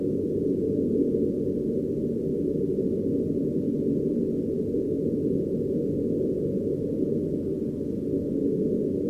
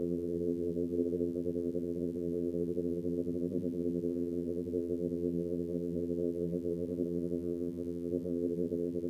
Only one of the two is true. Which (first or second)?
first